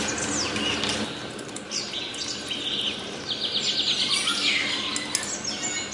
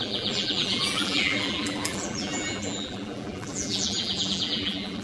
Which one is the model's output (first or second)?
second